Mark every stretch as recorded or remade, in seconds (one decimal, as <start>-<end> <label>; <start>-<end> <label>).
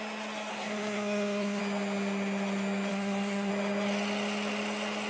0.0-0.5 recorded; 0.5-1.6 remade; 1.6-2.9 recorded; 2.9-3.5 remade; 3.5-5.1 recorded